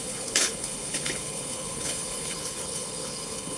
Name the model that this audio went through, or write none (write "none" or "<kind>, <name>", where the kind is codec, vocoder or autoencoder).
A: codec, HILCodec